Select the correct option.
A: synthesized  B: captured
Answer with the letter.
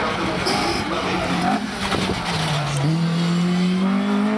B